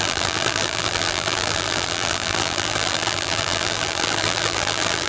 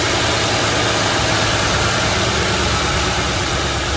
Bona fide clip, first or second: second